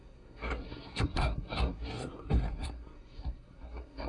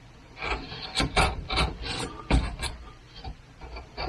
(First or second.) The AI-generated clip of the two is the first